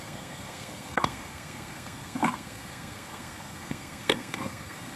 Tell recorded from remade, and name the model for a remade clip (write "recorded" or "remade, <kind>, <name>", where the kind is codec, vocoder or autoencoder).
remade, codec, SNAC